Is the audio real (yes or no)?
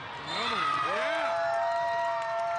yes